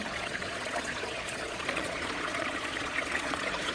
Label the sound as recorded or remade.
remade